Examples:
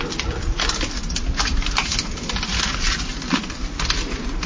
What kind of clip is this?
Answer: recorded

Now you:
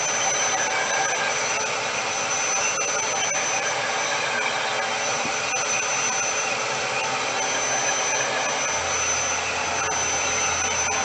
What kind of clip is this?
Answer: recorded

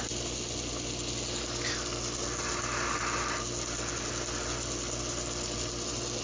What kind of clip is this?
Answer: recorded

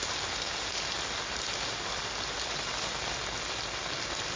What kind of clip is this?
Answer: recorded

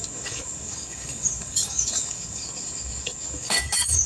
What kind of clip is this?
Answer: remade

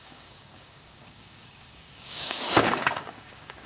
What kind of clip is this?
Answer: remade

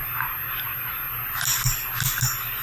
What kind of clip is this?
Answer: recorded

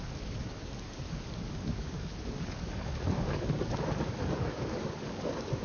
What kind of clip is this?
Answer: remade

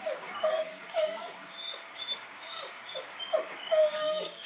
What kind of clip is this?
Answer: remade